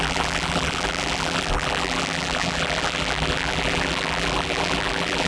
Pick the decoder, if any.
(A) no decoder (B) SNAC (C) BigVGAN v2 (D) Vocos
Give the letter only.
C